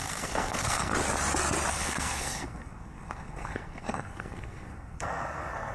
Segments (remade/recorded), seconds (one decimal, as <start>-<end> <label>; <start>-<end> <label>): 0.0-0.9 remade; 0.9-1.7 recorded; 1.7-5.7 remade